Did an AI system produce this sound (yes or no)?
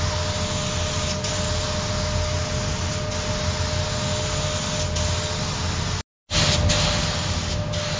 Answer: no